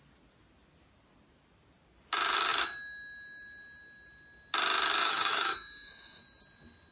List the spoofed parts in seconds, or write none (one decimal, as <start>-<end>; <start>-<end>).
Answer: 5.0-6.2